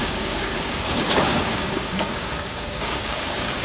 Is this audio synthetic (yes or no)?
yes